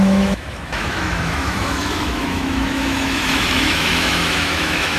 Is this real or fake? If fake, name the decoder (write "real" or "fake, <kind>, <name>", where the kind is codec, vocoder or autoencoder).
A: fake, autoencoder, DAC-VAE